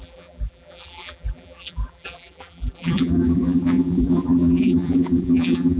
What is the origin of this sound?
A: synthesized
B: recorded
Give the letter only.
A